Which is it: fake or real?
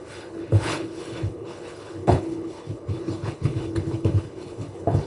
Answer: fake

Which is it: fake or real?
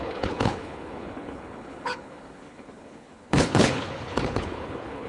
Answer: fake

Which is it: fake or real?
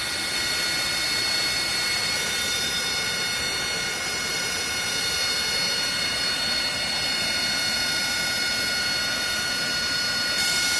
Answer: real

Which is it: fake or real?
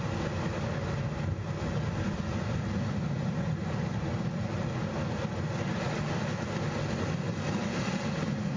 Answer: real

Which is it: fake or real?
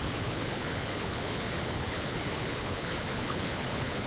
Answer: fake